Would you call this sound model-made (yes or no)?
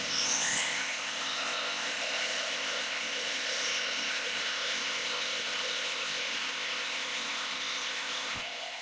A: yes